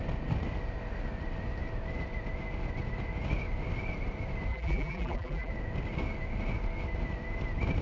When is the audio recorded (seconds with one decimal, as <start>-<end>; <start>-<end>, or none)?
0.0-4.5; 5.5-7.8